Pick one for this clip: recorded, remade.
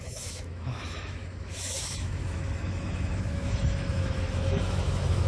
remade